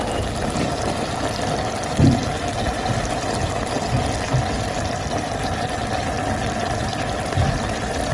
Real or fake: real